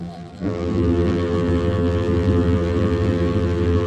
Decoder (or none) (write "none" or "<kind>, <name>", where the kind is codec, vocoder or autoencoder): vocoder, BigVGAN v2